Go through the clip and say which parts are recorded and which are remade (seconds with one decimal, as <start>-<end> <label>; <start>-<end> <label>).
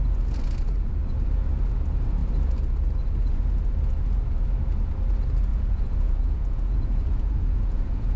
0.0-5.5 recorded; 5.5-8.2 remade